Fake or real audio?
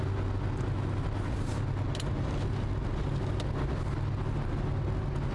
real